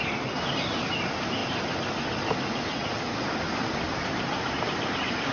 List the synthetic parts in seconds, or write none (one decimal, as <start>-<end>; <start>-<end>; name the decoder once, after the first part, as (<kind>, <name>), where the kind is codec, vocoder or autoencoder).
none

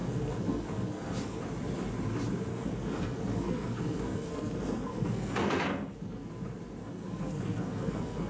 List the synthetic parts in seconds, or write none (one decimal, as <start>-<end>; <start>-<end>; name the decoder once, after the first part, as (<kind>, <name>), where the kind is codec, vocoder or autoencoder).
0.0-1.4 (codec, SNAC); 2.5-6.3; 6.8-8.3

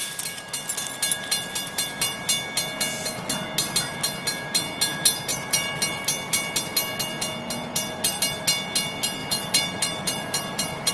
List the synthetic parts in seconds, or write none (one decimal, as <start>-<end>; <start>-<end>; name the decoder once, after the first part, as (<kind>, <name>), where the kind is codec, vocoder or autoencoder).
5.3-6.0 (vocoder, BigVGAN v2); 9.2-10.9

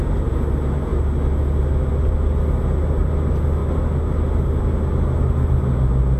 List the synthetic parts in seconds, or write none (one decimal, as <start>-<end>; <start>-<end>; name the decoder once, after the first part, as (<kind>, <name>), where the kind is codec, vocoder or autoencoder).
none

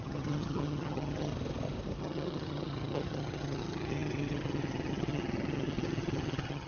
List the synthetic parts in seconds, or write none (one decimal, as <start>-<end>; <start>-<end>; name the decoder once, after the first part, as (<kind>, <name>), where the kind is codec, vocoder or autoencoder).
0.0-1.3 (vocoder, HiFi-GAN); 2.0-6.7